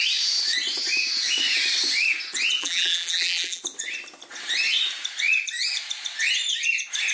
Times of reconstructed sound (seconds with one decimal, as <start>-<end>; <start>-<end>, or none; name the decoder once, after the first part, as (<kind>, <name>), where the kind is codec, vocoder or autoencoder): 2.6-3.6 (vocoder, BigVGAN v2)